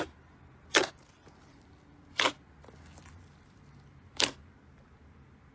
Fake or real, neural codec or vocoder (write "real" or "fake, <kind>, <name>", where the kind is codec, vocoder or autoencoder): real